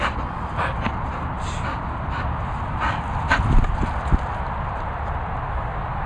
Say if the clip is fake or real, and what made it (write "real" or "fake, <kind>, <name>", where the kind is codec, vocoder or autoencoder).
real